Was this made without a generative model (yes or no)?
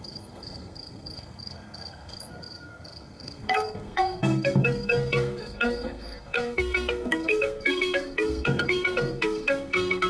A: no